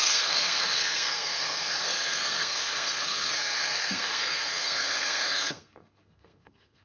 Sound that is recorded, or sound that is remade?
remade